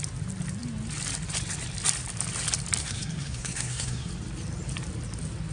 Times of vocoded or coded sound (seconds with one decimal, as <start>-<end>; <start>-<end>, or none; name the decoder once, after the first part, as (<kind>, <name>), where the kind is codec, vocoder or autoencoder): 2.8-4.1 (codec, SNAC)